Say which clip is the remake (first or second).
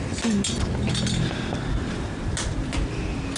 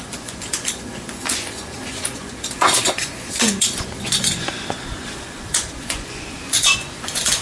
second